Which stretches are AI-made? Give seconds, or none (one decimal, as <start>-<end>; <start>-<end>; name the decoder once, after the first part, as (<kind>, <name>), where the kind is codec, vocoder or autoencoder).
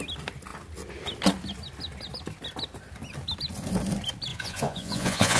4.3-5.4 (vocoder, Vocos)